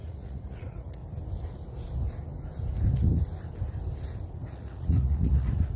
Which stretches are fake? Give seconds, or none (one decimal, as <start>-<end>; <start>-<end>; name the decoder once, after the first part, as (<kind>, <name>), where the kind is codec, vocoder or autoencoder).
0.0-1.0 (vocoder, Vocos); 4.5-5.8